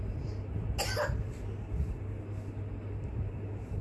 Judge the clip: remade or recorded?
recorded